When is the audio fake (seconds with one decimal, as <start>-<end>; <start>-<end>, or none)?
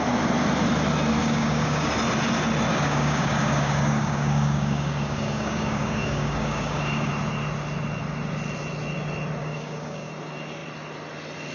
1.2-1.9; 2.7-7.1; 9.4-10.1